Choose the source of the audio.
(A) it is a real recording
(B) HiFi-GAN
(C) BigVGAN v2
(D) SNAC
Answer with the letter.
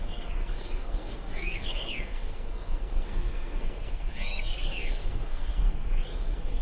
D